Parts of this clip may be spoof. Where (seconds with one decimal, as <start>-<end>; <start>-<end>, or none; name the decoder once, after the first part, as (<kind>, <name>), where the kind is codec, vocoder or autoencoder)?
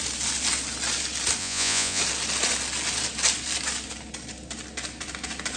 1.4-2.0 (vocoder, Vocos)